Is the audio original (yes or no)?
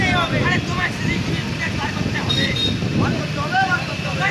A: yes